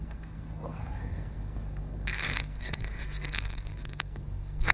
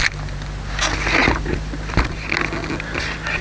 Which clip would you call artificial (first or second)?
first